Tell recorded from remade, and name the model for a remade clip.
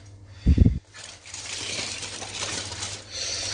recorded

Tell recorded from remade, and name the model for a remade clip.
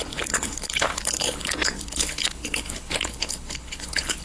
remade, codec, HILCodec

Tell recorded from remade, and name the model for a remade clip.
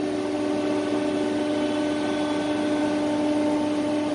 recorded